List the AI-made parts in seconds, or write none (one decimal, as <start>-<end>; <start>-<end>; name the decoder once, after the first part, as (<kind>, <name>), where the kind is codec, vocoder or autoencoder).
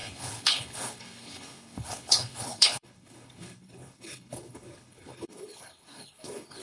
0.0-6.6 (codec, HILCodec)